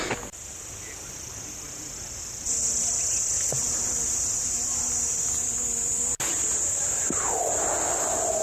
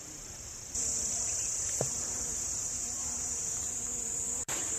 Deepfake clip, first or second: second